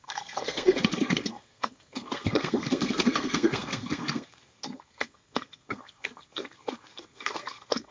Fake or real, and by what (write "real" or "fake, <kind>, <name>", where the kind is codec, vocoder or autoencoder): fake, codec, SNAC